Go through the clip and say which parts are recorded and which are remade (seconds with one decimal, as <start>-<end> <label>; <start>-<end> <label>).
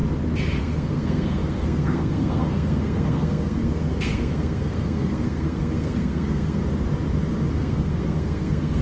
0.0-0.6 recorded; 0.6-6.6 remade; 6.6-7.5 recorded; 7.5-8.8 remade